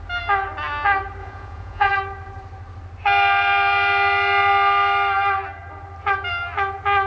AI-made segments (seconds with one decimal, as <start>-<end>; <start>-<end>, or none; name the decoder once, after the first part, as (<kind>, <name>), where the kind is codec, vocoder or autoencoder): 1.2-1.9 (vocoder, Vocos)